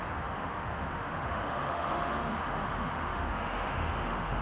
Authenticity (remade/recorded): remade